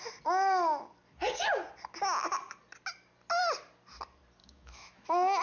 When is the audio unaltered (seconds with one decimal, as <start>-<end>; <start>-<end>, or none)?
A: 0.0-4.4